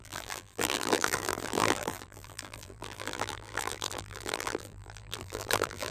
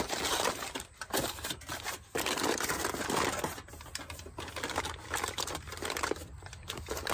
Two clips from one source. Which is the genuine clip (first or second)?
second